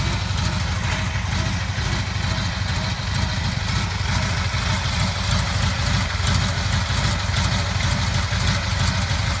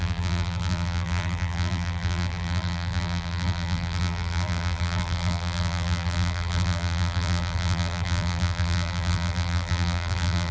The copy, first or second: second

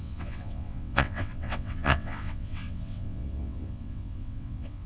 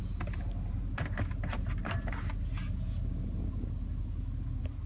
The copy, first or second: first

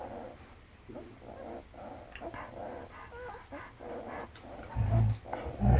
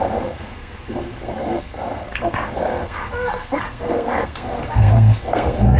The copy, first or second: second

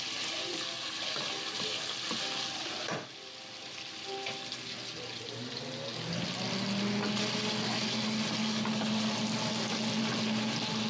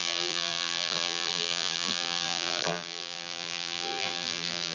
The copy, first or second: second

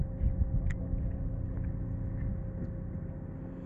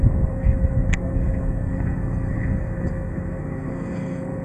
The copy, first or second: second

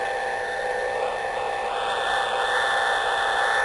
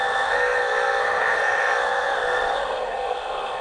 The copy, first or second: second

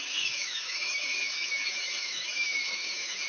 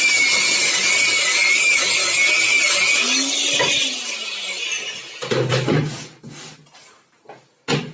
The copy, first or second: first